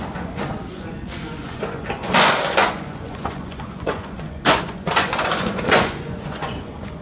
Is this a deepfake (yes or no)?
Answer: yes